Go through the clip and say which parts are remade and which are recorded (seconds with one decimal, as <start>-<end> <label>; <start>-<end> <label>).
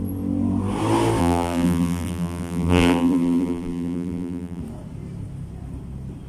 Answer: 0.0-1.2 recorded; 1.2-4.6 remade; 4.6-6.3 recorded